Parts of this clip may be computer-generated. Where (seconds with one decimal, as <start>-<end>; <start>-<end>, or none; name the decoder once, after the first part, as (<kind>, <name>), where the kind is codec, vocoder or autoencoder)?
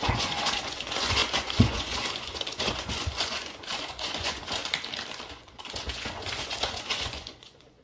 0.0-4.6 (vocoder, Vocos); 5.3-7.8